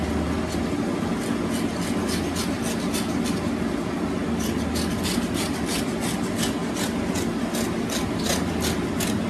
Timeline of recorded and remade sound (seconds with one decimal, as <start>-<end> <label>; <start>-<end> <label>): 0.0-9.3 recorded